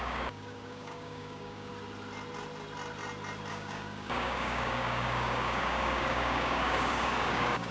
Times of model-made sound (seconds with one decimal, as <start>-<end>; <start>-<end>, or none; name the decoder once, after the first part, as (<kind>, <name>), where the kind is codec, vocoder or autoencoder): 0.0-1.7 (codec, DAC); 3.5-7.7

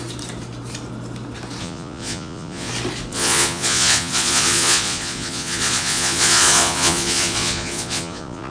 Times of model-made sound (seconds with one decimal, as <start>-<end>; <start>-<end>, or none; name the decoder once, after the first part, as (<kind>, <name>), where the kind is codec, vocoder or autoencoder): 1.6-2.7 (vocoder, Vocos); 3.1-8.5

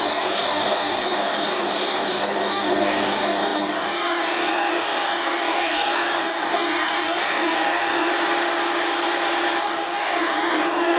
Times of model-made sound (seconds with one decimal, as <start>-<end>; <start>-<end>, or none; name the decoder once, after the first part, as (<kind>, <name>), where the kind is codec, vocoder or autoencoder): 0.0-8.1 (codec, DAC); 9.6-11.0

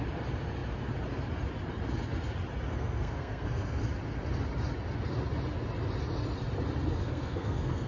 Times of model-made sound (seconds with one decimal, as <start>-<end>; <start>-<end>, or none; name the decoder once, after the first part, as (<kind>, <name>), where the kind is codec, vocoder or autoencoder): 2.7-3.8 (codec, SNAC); 7.0-7.9

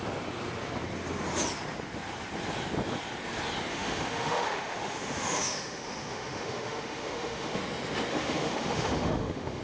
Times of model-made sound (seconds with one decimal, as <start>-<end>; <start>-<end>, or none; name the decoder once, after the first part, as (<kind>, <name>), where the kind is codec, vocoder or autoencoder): 3.7-7.6 (autoencoder, DAC-VAE); 8.1-9.6